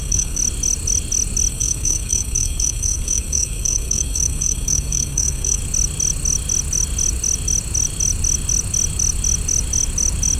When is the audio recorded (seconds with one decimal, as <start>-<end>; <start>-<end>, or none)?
0.4-1.5; 5.6-10.4